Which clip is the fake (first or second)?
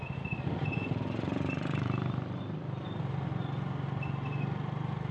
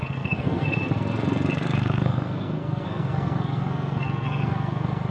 second